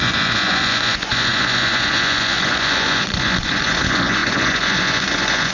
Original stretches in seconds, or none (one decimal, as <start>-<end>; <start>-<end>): none